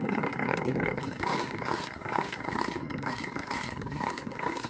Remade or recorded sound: remade